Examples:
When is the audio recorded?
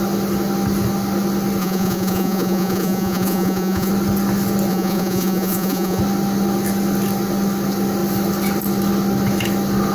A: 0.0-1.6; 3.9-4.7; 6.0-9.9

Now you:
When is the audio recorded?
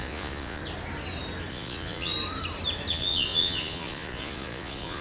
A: 0.6-1.5; 2.1-2.9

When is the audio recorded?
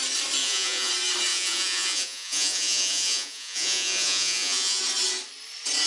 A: 0.0-0.4; 0.9-1.3; 4.8-5.9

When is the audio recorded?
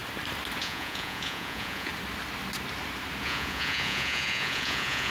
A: 0.0-0.6; 1.9-3.2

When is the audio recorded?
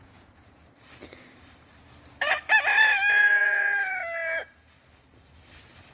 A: 0.6-3.2; 4.0-5.9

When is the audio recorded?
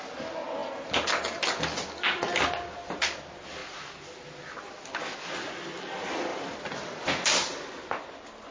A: 0.0-8.5